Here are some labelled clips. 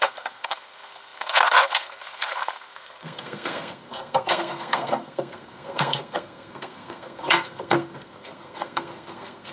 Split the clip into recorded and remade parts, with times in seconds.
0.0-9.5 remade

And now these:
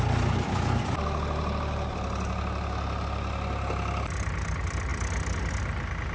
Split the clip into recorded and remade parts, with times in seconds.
0.0-6.1 recorded

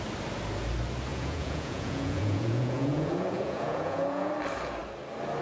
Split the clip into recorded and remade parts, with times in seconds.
0.0-1.1 recorded; 1.1-4.3 remade; 4.3-5.4 recorded